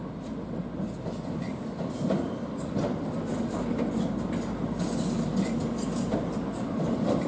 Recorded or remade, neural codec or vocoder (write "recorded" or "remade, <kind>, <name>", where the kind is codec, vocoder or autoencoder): recorded